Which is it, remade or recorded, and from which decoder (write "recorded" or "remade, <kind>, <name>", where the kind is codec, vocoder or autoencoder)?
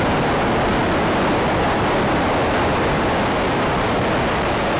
recorded